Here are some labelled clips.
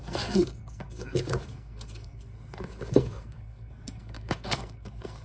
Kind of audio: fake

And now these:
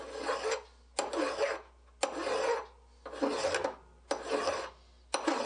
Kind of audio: real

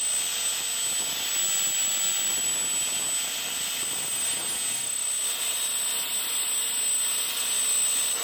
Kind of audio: real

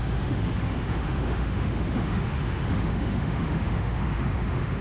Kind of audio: fake